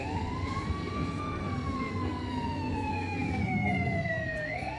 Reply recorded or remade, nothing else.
remade